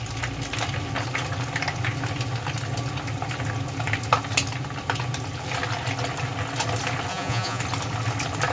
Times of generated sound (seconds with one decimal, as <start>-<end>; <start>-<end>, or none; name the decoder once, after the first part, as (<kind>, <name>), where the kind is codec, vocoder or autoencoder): 7.1-7.6 (vocoder, Vocos)